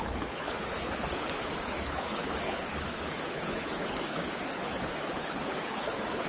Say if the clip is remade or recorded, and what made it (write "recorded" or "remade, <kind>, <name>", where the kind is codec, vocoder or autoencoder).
remade, codec, HILCodec